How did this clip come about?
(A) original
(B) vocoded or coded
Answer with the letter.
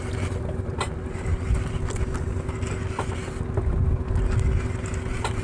A